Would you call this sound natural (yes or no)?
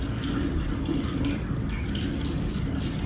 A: yes